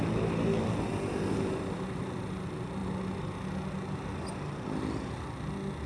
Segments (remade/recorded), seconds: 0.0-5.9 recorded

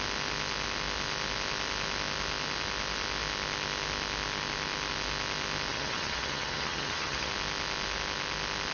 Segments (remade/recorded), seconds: 0.0-5.7 recorded; 5.7-7.3 remade; 7.3-8.7 recorded